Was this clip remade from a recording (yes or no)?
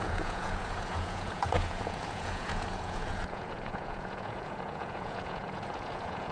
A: yes